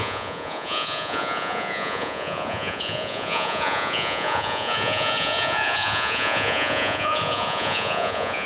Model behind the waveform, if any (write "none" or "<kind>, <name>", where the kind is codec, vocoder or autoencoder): vocoder, Vocos